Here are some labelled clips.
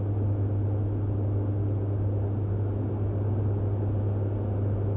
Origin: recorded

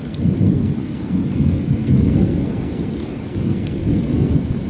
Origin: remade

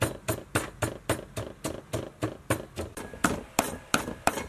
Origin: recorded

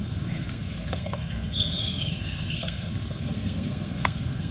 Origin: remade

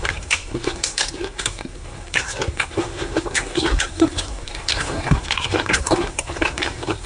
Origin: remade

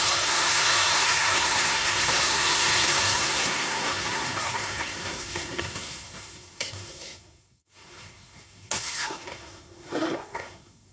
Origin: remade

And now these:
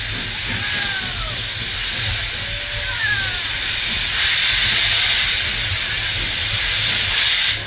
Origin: recorded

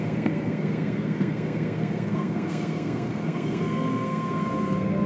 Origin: remade